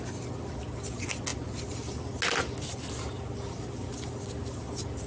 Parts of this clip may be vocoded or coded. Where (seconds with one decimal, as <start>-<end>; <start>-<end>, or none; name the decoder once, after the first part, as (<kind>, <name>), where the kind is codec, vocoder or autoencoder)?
none